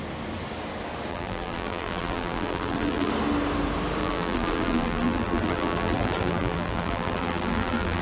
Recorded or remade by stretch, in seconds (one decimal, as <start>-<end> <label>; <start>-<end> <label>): 0.0-1.1 recorded; 1.1-3.1 remade; 3.1-4.0 recorded; 4.0-8.0 remade

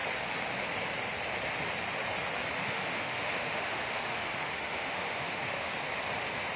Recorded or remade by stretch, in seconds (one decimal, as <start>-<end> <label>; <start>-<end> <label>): 0.0-2.6 recorded; 2.6-5.7 remade; 5.7-6.6 recorded